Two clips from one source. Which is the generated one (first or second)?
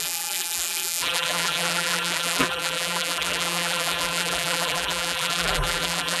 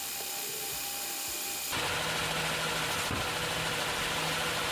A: first